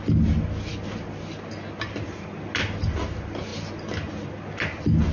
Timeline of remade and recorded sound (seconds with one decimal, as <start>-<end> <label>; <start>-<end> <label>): 0.0-5.1 recorded